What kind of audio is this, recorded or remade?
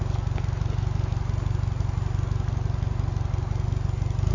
recorded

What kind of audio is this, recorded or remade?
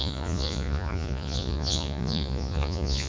remade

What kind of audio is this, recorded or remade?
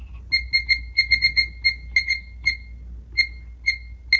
recorded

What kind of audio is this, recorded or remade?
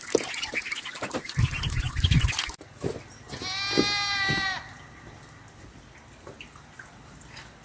recorded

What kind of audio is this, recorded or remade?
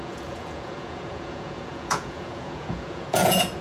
remade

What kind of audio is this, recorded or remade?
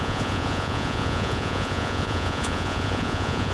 remade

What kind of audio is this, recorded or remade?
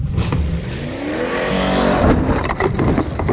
recorded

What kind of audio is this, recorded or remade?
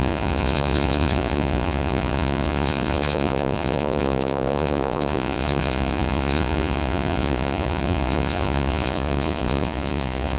remade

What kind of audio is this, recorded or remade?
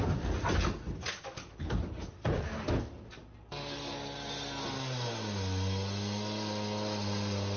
recorded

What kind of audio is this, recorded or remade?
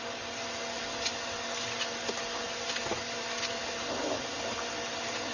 recorded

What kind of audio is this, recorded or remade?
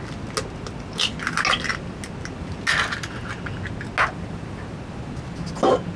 recorded